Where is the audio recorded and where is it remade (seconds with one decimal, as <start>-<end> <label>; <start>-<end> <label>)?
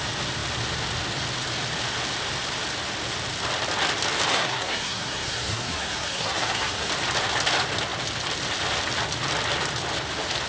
0.0-4.3 recorded; 4.3-6.9 remade; 6.9-10.5 recorded